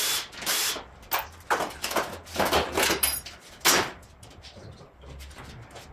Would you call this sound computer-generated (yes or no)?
no